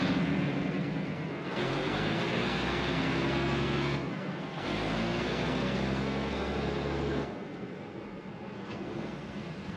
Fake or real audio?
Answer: fake